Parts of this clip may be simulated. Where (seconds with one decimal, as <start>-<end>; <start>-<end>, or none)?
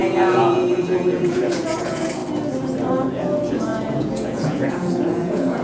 0.0-2.2; 2.9-5.6